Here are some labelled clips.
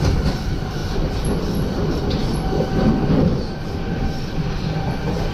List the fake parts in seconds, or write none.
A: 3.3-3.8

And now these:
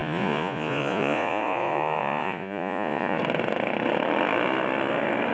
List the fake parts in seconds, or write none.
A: 0.0-3.2

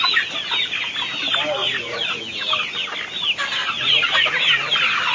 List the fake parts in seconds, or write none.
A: 1.6-2.2; 3.6-4.3

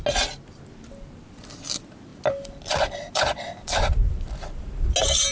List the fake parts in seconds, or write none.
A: none